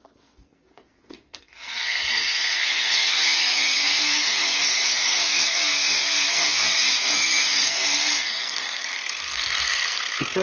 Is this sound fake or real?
fake